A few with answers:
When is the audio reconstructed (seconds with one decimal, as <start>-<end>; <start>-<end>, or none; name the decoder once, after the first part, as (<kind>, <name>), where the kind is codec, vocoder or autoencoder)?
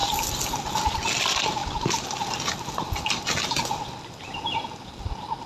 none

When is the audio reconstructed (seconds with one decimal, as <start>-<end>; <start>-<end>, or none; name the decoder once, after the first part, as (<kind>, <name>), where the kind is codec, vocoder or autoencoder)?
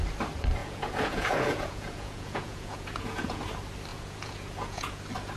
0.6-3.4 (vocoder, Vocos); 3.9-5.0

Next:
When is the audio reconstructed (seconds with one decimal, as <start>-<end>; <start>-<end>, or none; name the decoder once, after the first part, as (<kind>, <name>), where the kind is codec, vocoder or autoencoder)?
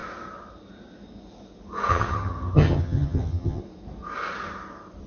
1.9-3.6 (vocoder, HiFi-GAN)